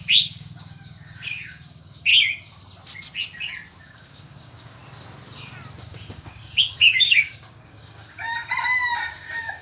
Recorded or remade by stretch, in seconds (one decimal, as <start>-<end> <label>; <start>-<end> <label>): 0.0-2.1 remade; 2.1-3.8 recorded; 3.8-4.8 remade; 4.8-5.8 recorded; 5.8-8.4 remade; 8.4-9.1 recorded; 9.1-9.6 remade